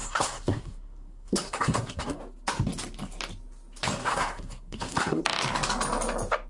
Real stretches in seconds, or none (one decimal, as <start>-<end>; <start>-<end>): 2.2-4.0; 5.2-6.5